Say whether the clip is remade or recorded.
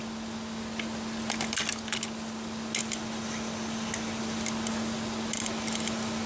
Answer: recorded